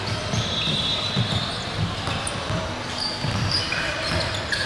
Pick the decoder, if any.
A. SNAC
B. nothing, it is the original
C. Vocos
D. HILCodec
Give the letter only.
B